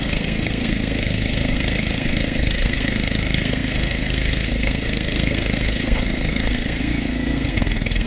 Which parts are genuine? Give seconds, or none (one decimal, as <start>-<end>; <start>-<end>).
none